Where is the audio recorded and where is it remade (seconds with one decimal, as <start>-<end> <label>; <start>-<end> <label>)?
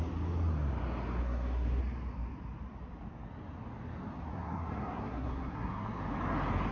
0.0-1.2 recorded; 1.2-1.8 remade; 1.8-4.3 recorded; 4.3-6.0 remade; 6.0-6.7 recorded